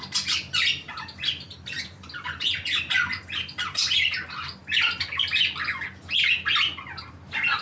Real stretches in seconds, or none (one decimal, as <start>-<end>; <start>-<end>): 0.0-7.6